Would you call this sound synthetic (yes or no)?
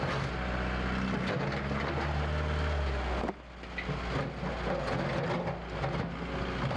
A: no